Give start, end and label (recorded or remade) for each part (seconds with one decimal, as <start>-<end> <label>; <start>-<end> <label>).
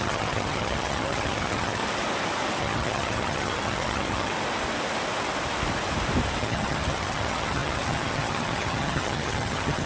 0.0-1.8 remade; 1.8-2.6 recorded; 2.6-4.3 remade; 4.3-6.4 recorded; 6.4-9.9 remade